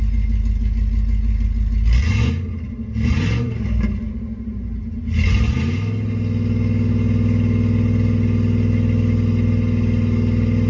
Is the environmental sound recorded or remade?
recorded